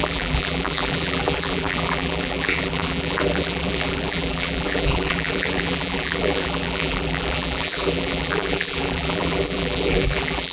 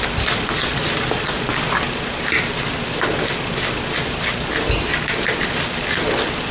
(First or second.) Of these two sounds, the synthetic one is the first